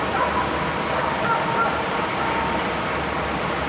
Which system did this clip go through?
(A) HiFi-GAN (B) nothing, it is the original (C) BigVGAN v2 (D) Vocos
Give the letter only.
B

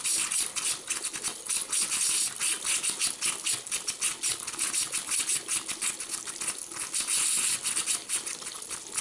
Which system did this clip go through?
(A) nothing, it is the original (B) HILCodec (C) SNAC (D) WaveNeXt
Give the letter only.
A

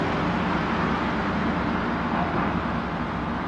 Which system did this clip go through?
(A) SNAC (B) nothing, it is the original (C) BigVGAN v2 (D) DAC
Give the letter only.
B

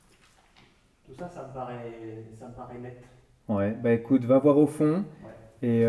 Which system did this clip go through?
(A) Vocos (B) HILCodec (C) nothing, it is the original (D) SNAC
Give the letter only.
C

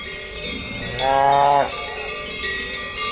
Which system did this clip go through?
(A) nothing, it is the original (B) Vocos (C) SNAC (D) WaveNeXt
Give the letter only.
A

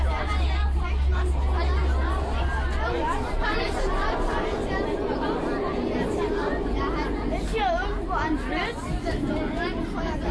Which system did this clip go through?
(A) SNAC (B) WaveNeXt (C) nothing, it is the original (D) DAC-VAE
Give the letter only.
C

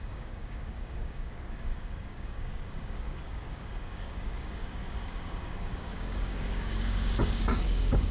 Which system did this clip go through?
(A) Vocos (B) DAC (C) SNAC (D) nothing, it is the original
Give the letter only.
B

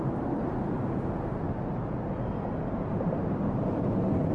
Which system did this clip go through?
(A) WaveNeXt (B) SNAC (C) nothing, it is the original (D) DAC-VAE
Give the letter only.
C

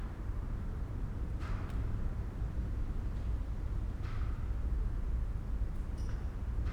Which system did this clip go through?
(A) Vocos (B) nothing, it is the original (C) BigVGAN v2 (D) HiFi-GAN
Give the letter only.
C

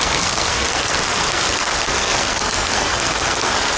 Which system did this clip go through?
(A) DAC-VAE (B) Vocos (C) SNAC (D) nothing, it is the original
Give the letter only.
C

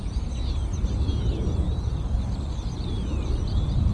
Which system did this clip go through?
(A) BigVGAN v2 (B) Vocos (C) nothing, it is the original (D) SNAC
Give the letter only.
C